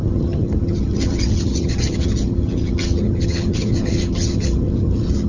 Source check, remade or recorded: remade